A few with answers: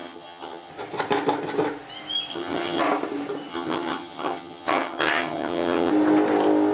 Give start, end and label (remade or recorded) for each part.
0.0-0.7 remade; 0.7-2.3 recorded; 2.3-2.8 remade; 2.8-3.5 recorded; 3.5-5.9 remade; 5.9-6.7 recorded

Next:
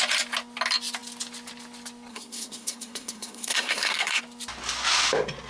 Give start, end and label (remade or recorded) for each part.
0.0-2.1 recorded; 2.1-4.2 remade; 4.2-5.5 recorded

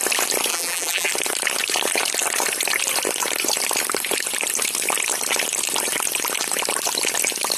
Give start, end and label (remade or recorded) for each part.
0.0-0.5 recorded; 0.5-1.1 remade; 1.1-7.6 recorded

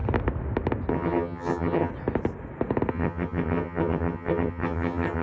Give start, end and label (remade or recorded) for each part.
0.0-0.9 recorded; 0.9-1.9 remade; 1.9-2.9 recorded; 2.9-5.2 remade

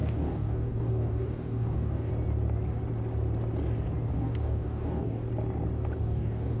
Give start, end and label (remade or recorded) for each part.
0.0-2.1 remade; 2.1-4.1 recorded; 4.1-5.2 remade; 5.2-6.0 recorded; 6.0-6.6 remade

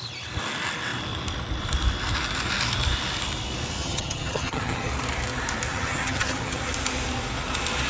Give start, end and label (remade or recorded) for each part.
0.0-3.8 recorded; 3.8-4.9 remade; 4.9-5.7 recorded; 5.7-6.6 remade; 6.6-7.9 recorded